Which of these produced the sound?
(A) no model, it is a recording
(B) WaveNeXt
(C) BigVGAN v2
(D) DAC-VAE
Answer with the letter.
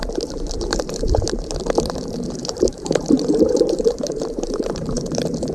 C